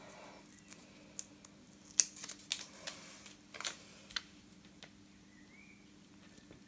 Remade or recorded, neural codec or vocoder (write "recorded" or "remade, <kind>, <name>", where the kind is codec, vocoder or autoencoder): recorded